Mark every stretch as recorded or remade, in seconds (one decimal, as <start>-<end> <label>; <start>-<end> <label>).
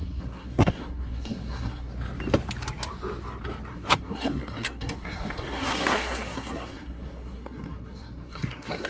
0.0-1.9 remade; 1.9-3.7 recorded; 3.7-8.9 remade